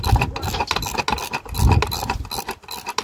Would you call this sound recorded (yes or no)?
yes